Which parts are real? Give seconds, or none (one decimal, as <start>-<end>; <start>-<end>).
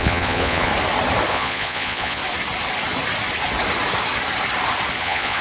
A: 0.7-1.3; 2.2-5.0